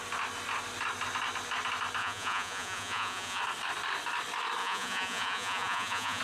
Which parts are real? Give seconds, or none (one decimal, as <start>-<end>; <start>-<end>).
0.0-2.0; 3.4-4.6